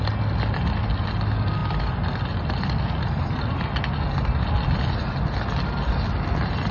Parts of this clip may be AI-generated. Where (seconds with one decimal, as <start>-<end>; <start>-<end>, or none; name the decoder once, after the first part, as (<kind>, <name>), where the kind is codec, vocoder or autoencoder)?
none

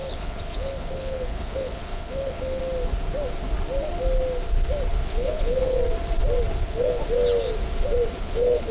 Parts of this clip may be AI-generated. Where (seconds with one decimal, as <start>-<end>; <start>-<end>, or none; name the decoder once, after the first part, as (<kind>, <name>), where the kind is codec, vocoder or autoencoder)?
0.0-2.6 (codec, HILCodec); 4.9-5.8; 6.6-7.0; 8.2-8.7